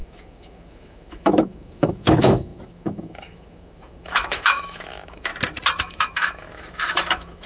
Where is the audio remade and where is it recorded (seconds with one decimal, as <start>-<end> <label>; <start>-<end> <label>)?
0.0-5.3 remade; 5.3-5.8 recorded; 5.8-7.5 remade